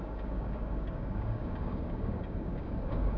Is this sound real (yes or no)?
no